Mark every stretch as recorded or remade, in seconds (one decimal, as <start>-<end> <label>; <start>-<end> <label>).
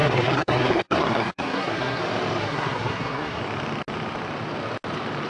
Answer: 0.0-2.0 remade; 2.0-2.4 recorded; 2.4-3.4 remade; 3.4-5.3 recorded